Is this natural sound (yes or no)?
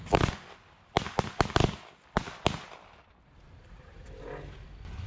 yes